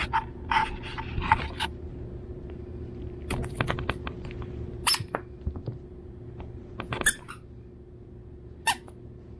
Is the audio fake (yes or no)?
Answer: no